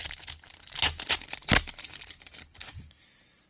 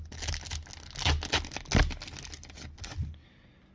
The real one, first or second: second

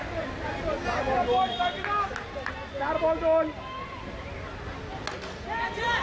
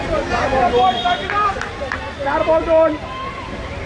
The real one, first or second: first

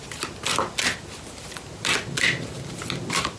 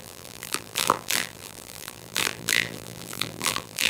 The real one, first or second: first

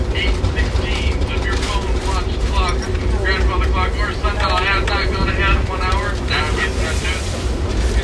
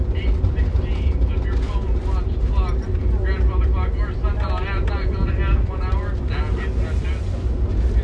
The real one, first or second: second